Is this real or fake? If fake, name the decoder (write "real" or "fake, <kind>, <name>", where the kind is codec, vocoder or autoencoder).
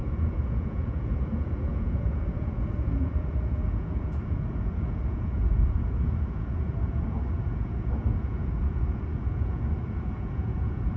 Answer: fake, vocoder, Vocos